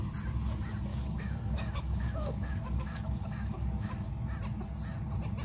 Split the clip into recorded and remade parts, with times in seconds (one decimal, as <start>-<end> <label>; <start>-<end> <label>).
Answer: 0.0-0.9 recorded; 0.9-4.1 remade; 4.1-5.4 recorded